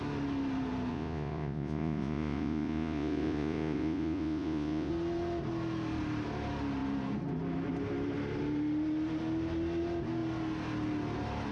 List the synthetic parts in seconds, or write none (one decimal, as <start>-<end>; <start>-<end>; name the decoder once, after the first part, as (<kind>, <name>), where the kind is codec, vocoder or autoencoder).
0.9-4.9 (vocoder, Vocos)